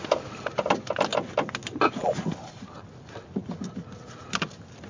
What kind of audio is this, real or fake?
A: real